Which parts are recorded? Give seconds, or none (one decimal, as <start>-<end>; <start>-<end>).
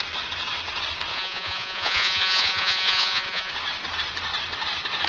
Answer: 0.0-1.1; 3.5-5.1